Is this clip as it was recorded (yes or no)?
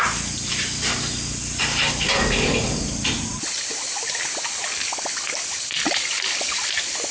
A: yes